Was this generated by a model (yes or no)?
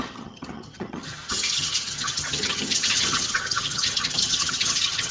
yes